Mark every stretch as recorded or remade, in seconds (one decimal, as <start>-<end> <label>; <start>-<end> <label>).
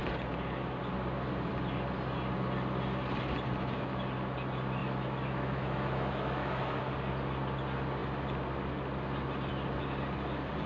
0.0-4.8 recorded; 4.8-6.8 remade; 6.8-10.7 recorded